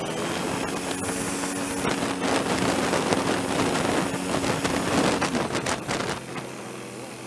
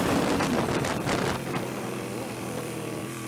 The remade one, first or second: second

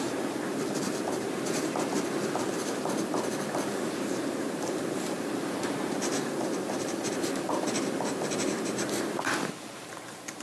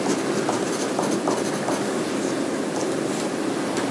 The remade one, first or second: first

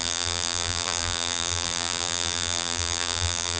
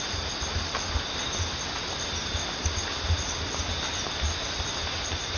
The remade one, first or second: first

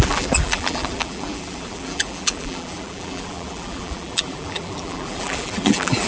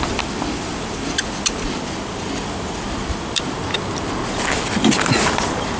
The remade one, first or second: first